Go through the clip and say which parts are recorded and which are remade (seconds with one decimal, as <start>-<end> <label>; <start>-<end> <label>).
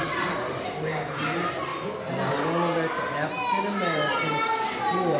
0.0-1.7 remade; 1.7-4.8 recorded; 4.8-5.2 remade